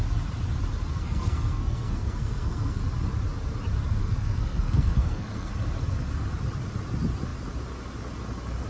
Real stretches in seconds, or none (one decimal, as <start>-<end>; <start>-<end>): 0.0-0.9; 2.8-4.0; 5.5-8.7